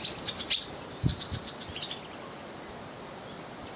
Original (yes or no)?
yes